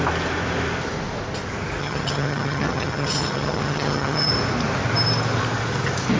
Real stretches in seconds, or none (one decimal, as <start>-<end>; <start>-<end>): 0.0-1.8; 4.3-6.2